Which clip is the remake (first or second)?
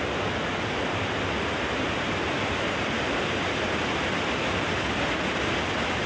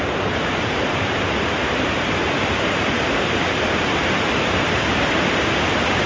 second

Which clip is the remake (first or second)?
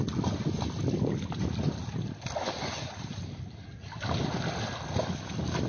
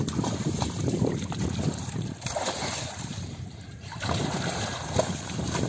second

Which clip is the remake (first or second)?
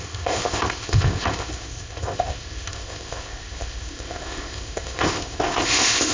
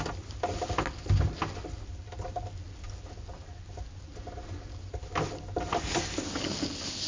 first